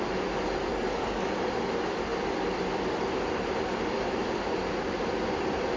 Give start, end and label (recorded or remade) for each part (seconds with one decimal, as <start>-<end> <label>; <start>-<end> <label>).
0.0-0.7 recorded; 0.7-1.3 remade; 1.3-5.8 recorded